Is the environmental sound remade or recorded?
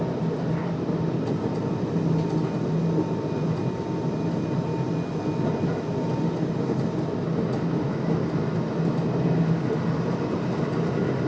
recorded